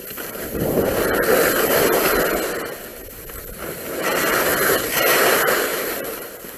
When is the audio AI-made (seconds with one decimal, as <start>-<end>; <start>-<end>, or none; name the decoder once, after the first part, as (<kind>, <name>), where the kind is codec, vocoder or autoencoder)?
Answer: 5.7-6.6 (vocoder, BigVGAN v2)